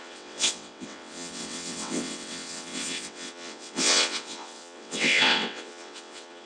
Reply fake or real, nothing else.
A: fake